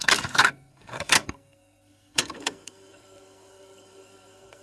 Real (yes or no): no